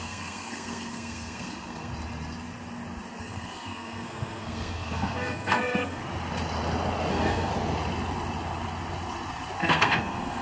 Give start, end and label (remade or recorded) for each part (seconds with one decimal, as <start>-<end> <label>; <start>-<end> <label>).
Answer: 0.0-1.9 remade; 1.9-3.2 recorded; 3.2-6.0 remade; 6.0-7.1 recorded; 7.1-7.5 remade; 7.5-9.6 recorded; 9.6-10.4 remade